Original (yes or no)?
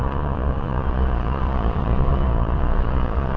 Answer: no